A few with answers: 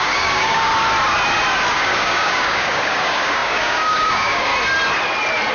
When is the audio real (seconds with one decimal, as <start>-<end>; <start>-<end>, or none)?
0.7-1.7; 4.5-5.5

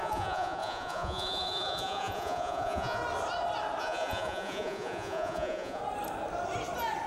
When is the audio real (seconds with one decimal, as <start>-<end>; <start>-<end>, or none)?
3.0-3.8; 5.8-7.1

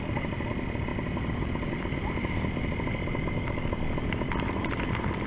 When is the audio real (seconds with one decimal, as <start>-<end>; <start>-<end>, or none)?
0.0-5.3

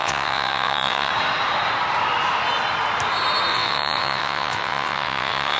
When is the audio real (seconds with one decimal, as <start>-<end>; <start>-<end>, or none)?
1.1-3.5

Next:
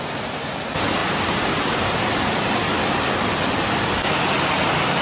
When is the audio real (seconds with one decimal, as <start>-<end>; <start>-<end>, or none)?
0.0-5.0

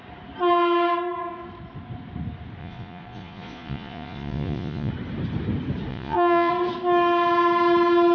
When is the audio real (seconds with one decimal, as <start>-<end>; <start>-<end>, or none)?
0.0-2.6; 4.9-5.9; 6.5-8.1

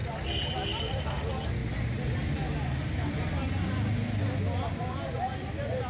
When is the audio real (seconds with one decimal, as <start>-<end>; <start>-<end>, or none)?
0.0-5.9